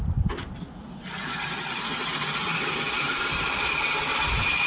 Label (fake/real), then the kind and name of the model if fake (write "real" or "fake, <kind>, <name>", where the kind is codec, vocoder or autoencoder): real